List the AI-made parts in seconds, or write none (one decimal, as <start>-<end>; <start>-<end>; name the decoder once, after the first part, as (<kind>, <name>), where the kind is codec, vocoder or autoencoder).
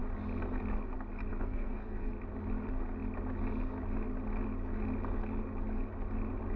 1.3-2.1 (codec, SNAC)